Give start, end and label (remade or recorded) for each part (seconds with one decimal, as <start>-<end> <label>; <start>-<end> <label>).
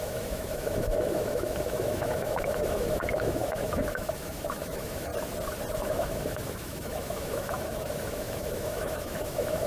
0.0-5.1 remade; 5.1-5.7 recorded; 5.7-9.7 remade